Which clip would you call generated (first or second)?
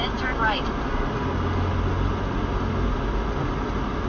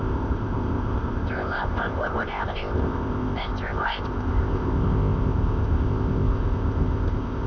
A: second